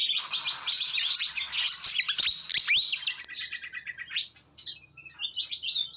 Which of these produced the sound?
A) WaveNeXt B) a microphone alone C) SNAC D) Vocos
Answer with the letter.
B